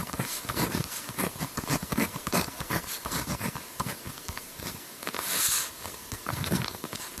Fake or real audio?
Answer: fake